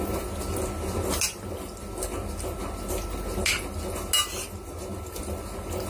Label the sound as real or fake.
real